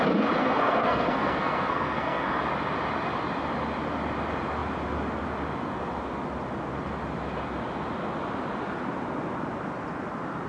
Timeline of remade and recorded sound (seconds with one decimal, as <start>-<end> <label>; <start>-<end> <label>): 0.0-0.4 recorded; 0.4-2.4 remade; 2.4-10.5 recorded